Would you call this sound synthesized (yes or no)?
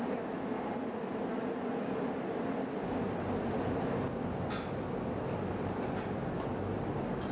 no